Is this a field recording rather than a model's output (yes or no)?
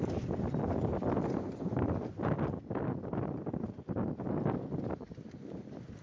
yes